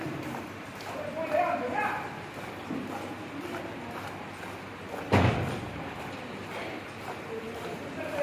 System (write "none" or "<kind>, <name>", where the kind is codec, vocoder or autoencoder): none